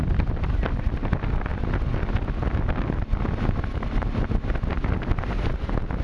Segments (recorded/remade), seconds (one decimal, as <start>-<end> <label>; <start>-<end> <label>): 0.0-6.0 recorded